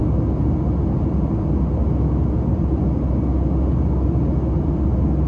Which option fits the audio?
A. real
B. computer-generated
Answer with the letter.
A